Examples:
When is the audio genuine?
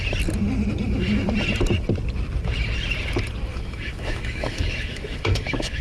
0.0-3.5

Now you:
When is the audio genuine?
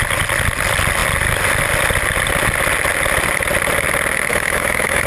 0.0-4.3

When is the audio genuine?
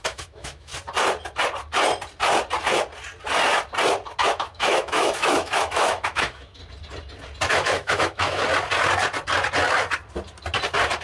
0.7-4.2; 6.6-7.5; 8.4-11.0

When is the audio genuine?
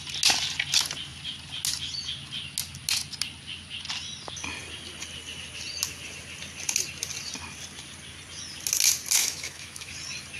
0.0-9.2; 9.9-10.4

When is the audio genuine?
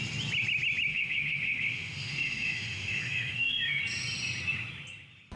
0.0-0.9; 3.8-5.4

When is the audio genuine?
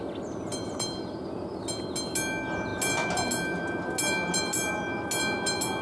0.0-5.8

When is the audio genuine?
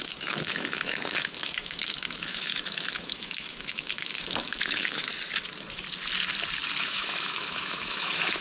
5.1-6.8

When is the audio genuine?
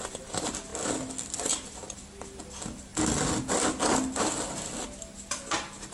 0.0-5.9